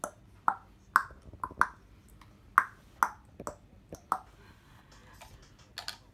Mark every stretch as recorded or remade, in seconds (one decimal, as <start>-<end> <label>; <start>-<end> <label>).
0.0-6.1 recorded